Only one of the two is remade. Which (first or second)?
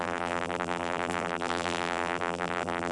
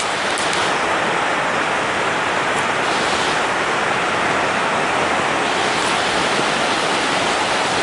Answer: first